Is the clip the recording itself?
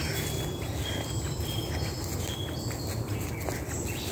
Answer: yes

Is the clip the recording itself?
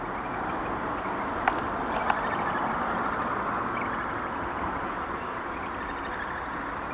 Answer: yes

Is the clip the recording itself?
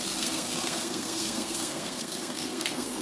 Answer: no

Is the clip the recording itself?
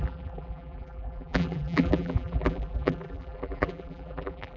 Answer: no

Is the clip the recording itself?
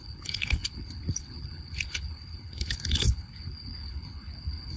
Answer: no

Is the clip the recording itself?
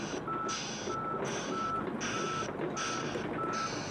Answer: yes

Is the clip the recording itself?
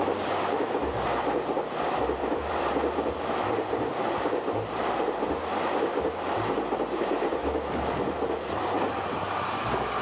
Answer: no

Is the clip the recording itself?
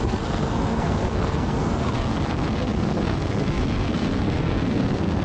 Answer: no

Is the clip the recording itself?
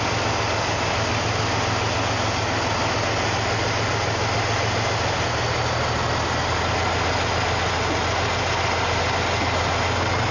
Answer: yes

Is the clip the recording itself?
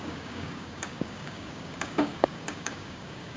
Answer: no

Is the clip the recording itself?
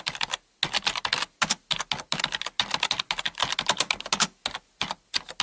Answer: yes